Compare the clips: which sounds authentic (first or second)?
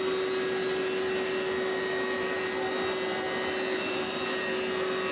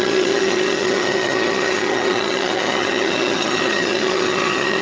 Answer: first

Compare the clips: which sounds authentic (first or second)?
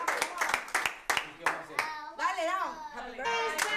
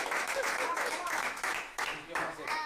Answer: first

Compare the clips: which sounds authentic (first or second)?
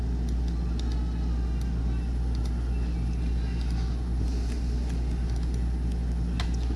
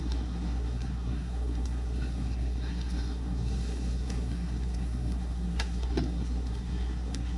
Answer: first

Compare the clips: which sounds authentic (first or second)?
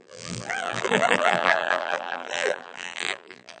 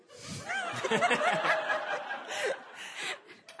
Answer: second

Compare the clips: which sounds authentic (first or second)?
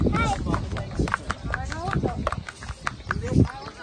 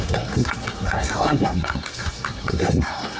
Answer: first